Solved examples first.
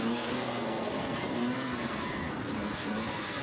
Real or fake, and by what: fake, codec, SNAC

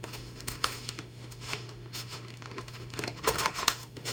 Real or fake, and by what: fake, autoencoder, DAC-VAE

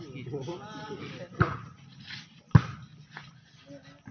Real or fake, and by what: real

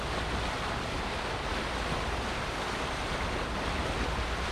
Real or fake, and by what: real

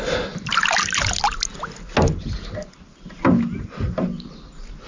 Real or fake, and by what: real